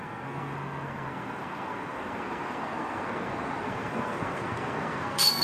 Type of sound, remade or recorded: remade